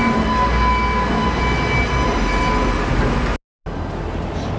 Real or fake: real